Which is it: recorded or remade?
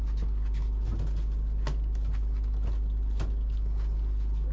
recorded